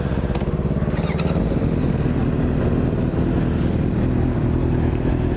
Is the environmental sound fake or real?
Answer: real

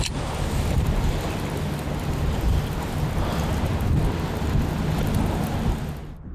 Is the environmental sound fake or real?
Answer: real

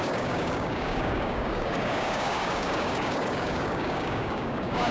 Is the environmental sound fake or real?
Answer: fake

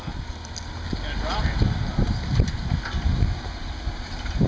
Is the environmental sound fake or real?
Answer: real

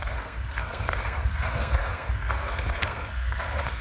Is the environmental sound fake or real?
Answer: fake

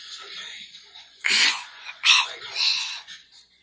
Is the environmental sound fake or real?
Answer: fake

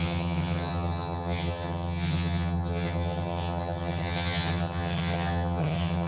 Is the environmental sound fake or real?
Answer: fake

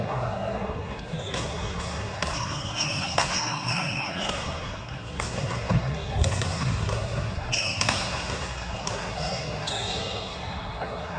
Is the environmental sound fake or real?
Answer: fake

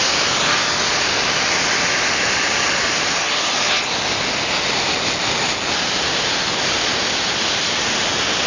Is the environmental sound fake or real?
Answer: real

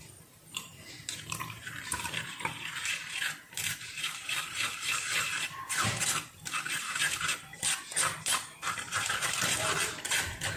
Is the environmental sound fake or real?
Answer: fake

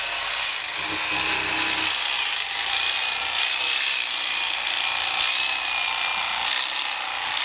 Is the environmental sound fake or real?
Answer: real